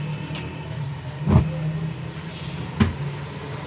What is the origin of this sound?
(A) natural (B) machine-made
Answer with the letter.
A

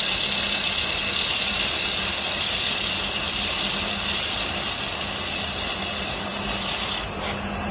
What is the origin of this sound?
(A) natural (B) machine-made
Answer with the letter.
A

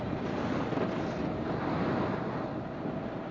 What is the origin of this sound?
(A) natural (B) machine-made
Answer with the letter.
A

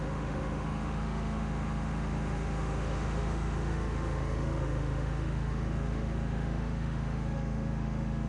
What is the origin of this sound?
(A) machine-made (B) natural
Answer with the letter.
A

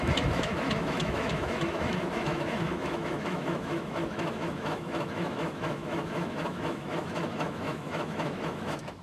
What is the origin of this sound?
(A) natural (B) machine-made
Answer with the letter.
B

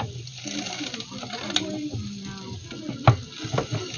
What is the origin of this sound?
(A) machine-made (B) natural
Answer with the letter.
B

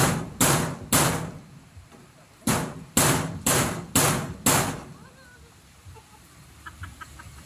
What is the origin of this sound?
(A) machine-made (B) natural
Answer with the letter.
B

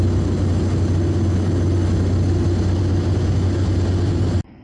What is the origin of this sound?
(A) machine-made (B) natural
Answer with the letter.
B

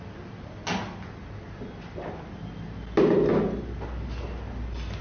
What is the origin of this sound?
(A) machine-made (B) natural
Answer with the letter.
B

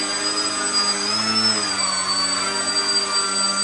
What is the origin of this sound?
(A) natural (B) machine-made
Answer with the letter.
A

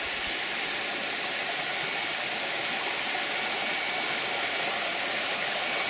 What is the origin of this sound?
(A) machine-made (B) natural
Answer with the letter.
B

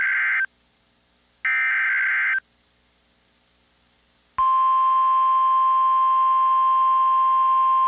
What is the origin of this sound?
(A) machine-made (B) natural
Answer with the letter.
B